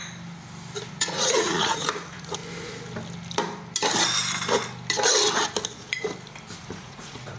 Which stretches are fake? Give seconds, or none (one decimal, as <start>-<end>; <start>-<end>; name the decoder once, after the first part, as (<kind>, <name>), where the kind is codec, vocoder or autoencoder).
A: 0.9-2.4 (vocoder, Vocos); 6.7-7.4